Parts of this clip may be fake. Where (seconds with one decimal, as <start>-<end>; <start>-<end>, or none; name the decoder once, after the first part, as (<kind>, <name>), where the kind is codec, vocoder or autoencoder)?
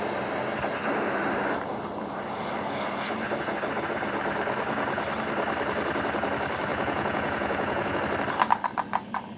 6.7-8.0 (vocoder, Vocos)